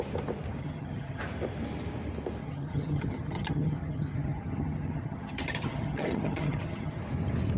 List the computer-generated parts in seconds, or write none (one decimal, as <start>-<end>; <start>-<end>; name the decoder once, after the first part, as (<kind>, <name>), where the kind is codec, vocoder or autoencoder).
0.6-1.2 (vocoder, HiFi-GAN); 2.4-7.0